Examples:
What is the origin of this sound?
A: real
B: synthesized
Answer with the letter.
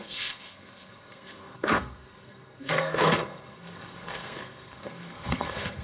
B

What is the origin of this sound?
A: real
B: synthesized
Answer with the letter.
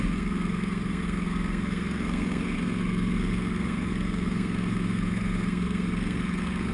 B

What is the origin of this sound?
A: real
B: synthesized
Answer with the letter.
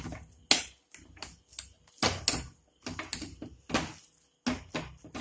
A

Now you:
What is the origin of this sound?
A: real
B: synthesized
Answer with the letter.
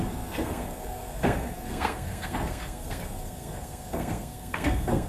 B